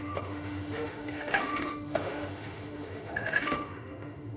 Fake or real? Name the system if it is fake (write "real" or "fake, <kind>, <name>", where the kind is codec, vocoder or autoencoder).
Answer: fake, autoencoder, DAC-VAE